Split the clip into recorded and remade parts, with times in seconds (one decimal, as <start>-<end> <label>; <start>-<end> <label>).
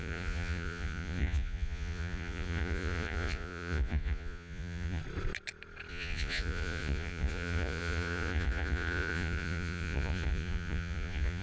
0.0-5.0 remade; 5.0-5.9 recorded; 5.9-11.4 remade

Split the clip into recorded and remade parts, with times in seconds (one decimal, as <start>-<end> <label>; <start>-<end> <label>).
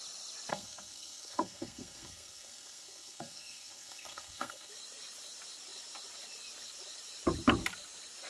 0.0-0.5 recorded; 0.5-4.7 remade; 4.7-8.3 recorded